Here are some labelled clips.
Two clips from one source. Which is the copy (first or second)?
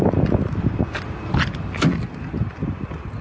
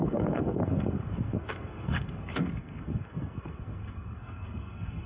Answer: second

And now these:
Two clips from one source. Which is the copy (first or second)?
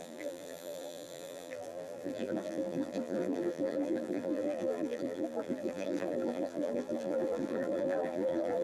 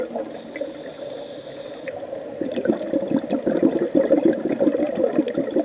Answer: first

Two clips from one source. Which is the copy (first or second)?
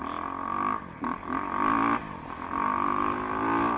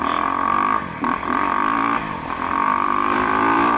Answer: second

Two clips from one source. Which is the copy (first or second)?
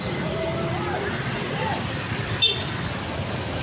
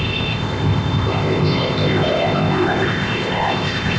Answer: second